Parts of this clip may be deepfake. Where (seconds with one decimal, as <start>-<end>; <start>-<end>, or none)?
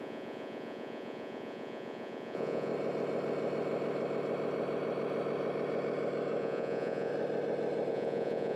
0.0-2.7; 6.4-7.1; 7.9-8.6